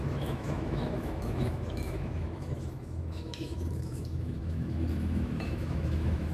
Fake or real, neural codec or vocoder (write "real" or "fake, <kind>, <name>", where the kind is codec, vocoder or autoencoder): fake, autoencoder, DAC-VAE